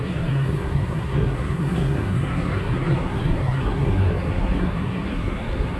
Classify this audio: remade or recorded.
remade